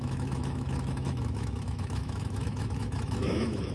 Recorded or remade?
remade